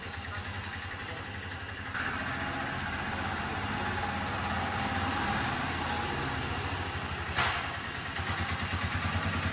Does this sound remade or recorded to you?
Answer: recorded